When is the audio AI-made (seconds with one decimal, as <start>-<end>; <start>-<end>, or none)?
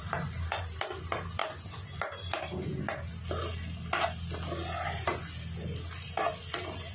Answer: none